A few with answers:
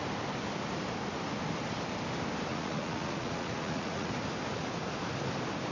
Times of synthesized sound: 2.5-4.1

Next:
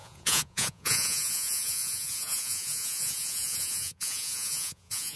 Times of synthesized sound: 0.0-5.2

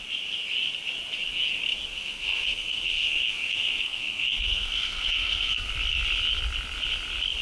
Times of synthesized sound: 1.9-5.7

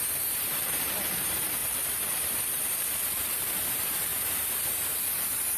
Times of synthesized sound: 0.0-5.6